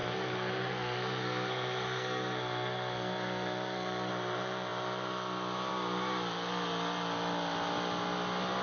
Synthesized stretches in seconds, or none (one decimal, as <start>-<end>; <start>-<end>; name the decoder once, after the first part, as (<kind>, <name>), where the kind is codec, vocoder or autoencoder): 0.0-4.1 (codec, SNAC)